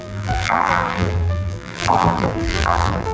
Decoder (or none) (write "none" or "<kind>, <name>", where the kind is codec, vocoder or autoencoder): vocoder, BigVGAN v2